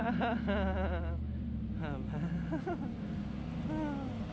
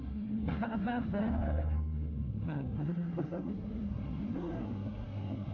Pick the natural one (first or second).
first